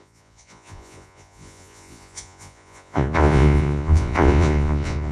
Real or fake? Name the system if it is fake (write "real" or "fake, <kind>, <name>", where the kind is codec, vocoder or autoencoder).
fake, vocoder, Vocos